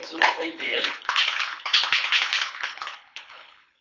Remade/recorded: remade